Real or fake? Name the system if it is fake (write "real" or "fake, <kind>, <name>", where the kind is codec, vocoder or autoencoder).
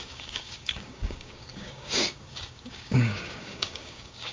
fake, codec, DAC